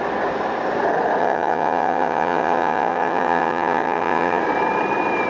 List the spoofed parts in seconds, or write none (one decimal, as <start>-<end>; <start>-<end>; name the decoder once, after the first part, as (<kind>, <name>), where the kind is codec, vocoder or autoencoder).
1.2-4.4 (vocoder, HiFi-GAN)